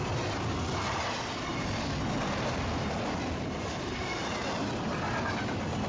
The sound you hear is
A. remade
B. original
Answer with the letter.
B